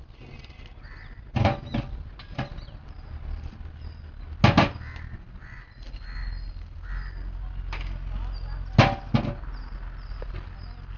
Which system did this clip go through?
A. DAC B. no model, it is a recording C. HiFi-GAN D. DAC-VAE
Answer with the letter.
B